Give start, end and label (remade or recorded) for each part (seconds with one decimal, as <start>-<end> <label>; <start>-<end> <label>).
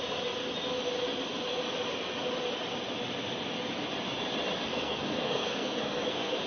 0.0-4.7 recorded; 4.7-6.5 remade